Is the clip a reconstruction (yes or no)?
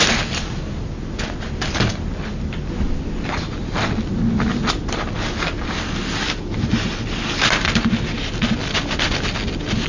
no